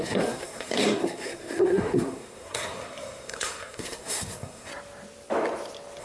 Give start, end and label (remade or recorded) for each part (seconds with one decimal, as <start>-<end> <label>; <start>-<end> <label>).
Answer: 0.0-4.7 remade; 4.7-6.0 recorded